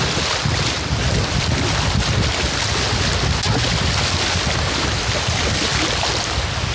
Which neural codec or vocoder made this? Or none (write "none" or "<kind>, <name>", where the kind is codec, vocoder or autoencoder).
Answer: none